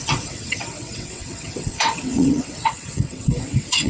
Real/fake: fake